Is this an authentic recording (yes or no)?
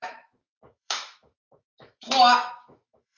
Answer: no